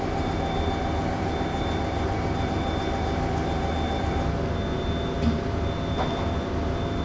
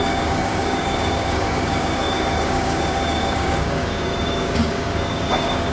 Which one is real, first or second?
first